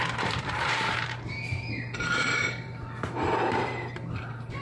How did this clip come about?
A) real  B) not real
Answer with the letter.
B